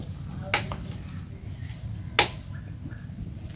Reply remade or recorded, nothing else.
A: recorded